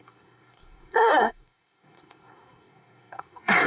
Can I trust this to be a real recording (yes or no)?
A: no